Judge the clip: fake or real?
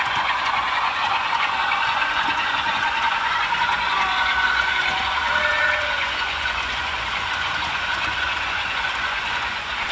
fake